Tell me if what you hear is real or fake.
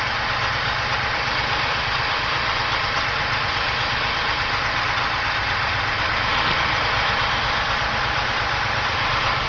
fake